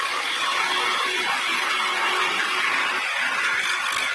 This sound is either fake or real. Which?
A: real